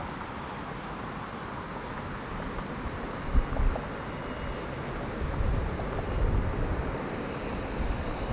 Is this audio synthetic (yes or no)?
no